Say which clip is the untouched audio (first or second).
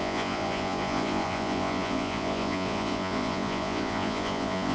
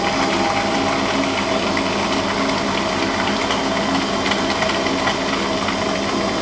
second